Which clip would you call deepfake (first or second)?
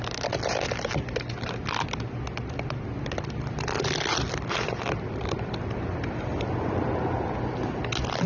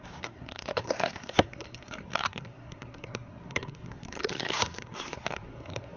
second